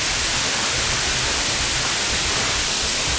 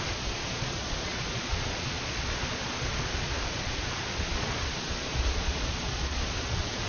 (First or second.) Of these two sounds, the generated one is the second